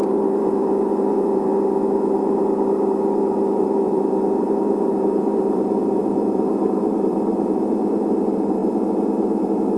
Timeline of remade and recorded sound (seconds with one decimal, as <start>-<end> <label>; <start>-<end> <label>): 0.0-1.5 remade; 1.5-3.6 recorded; 3.6-9.8 remade